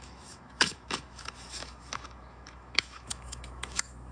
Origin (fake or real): fake